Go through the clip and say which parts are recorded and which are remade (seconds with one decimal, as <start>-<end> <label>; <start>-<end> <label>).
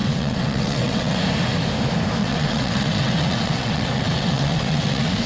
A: 0.0-1.2 remade; 1.2-2.2 recorded; 2.2-5.3 remade